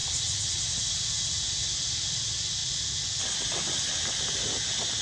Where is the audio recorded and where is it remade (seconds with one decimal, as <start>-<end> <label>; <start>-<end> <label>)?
0.0-5.0 recorded